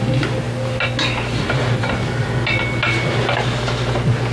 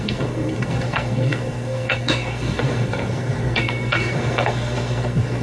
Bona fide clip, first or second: first